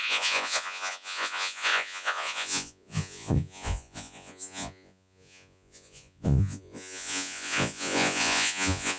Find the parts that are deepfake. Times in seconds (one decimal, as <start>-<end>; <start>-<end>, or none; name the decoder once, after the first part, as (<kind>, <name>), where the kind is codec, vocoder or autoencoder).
0.0-9.0 (vocoder, Vocos)